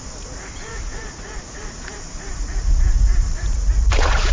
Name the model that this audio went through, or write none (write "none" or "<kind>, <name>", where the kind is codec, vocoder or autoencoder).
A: vocoder, Vocos